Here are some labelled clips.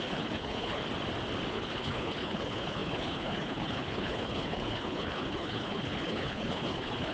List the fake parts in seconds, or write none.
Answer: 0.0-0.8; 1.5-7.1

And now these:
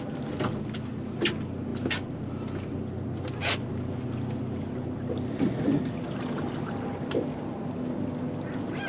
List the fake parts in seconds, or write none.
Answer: none

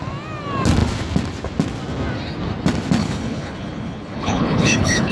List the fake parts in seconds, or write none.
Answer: 3.0-5.1

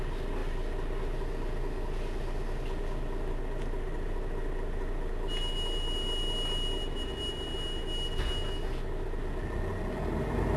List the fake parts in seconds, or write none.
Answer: none

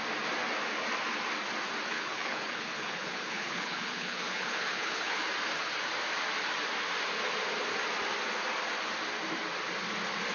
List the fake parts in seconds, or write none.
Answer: 1.9-5.2

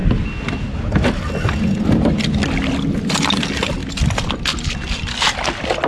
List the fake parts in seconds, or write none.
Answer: none